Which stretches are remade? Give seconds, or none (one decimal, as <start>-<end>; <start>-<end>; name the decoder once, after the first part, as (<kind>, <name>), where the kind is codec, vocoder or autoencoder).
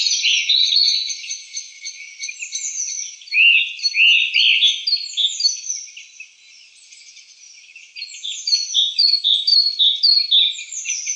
0.0-2.3 (vocoder, Vocos); 6.4-9.5; 10.6-11.2